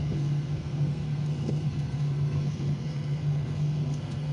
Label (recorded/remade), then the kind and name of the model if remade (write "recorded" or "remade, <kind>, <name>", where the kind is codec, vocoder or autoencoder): remade, codec, SNAC